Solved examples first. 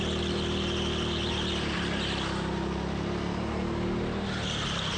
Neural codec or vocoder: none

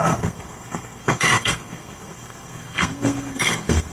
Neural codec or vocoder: codec, SNAC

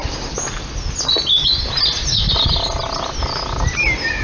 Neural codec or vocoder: none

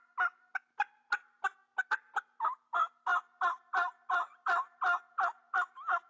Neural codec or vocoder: none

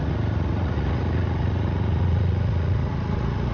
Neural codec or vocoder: vocoder, Vocos